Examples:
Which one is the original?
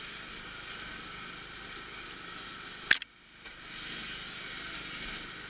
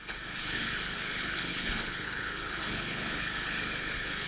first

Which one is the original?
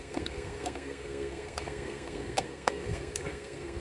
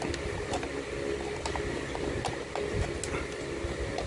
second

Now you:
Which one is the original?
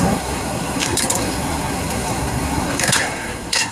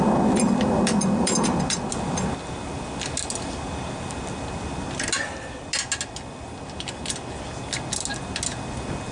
second